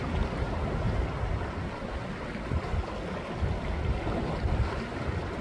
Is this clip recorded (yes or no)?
yes